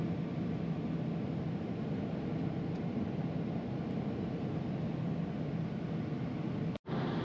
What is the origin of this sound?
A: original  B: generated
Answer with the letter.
A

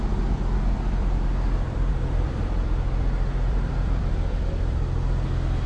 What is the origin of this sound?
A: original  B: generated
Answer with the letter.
B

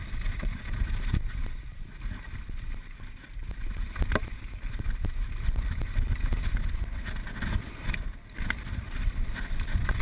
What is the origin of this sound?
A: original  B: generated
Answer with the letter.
A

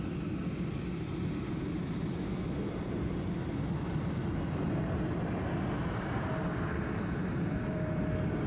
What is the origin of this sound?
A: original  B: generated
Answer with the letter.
A